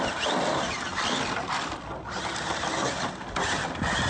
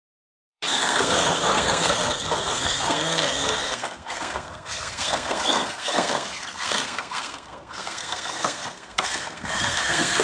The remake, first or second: second